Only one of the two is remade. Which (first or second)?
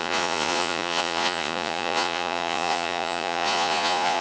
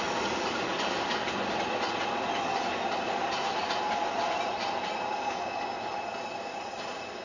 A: first